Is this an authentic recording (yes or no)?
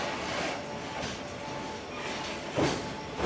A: yes